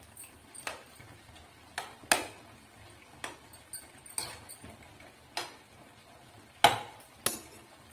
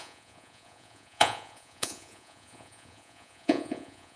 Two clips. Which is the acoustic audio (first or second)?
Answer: first